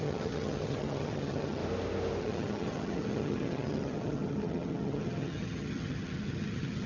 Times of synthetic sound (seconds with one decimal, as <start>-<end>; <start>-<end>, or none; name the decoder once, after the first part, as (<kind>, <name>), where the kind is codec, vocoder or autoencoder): 0.0-1.6 (vocoder, HiFi-GAN); 2.2-6.9